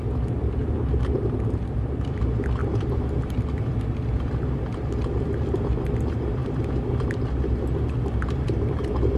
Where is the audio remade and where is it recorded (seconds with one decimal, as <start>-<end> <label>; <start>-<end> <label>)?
0.0-2.6 recorded; 2.6-3.6 remade; 3.6-9.2 recorded